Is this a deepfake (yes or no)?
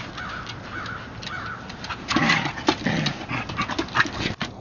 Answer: no